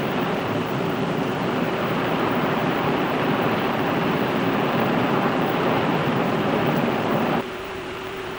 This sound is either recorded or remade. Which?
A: remade